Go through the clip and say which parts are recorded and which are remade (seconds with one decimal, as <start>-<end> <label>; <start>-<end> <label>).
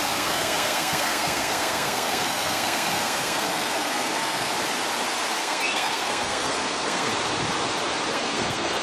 0.0-4.5 remade; 4.5-5.4 recorded; 5.4-7.1 remade; 7.1-8.1 recorded; 8.1-8.8 remade